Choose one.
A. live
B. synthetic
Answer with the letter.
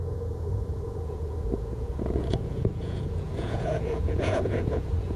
B